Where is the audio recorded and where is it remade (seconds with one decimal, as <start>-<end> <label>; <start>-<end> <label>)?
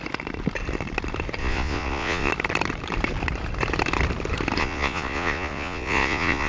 0.0-1.4 recorded; 1.4-2.3 remade; 2.3-4.6 recorded; 4.6-6.5 remade